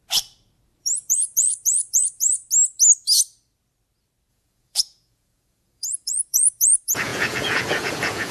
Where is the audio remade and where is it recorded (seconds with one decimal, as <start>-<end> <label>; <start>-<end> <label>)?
0.0-0.8 recorded; 0.8-2.4 remade; 2.4-4.3 recorded; 4.3-8.3 remade